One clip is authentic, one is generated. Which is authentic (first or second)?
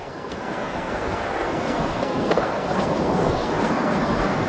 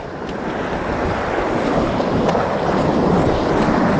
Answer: second